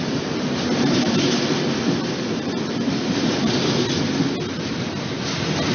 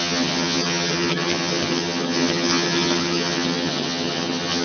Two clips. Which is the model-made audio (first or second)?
second